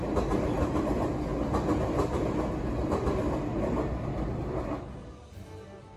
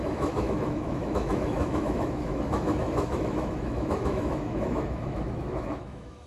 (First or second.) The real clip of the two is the first